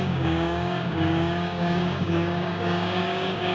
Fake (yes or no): yes